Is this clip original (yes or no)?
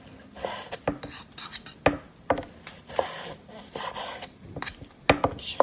yes